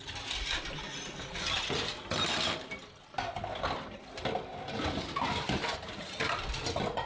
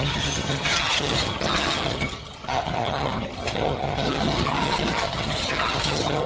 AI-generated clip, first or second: second